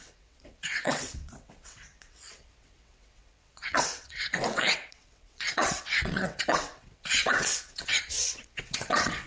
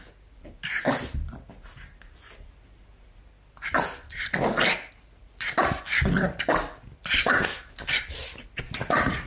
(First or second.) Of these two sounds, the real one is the second